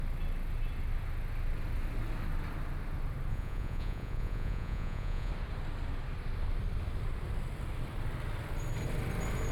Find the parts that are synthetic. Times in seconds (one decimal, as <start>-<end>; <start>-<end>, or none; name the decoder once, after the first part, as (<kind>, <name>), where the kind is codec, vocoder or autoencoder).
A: 3.3-5.3 (vocoder, Vocos)